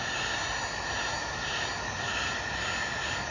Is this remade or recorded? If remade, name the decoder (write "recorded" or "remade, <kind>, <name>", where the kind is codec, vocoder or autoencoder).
recorded